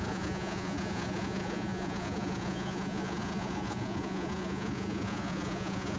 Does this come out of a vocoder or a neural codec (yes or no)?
yes